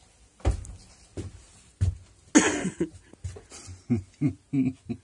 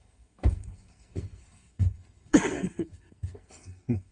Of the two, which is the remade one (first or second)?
second